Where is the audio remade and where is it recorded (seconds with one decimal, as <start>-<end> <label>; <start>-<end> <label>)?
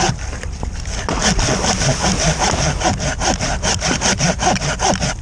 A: 0.0-5.2 recorded